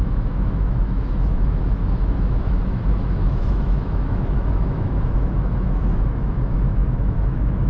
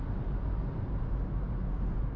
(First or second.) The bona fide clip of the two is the second